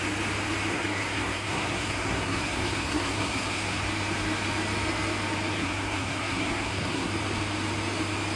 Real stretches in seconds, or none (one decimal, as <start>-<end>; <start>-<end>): 0.0-0.7; 3.8-5.6; 7.1-8.4